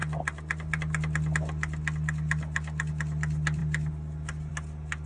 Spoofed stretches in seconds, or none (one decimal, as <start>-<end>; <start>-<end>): none